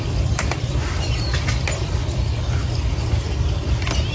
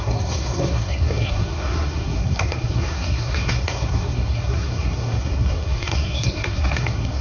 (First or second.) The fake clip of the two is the second